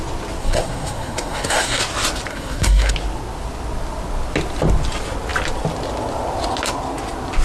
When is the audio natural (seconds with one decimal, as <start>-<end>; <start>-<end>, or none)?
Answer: 0.0-0.4; 1.8-2.3; 2.9-7.4